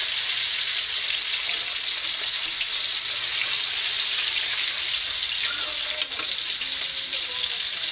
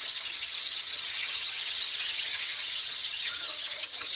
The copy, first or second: second